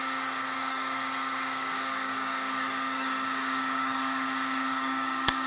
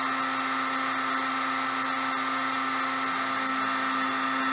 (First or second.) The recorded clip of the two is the second